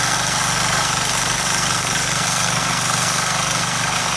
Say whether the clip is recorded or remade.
remade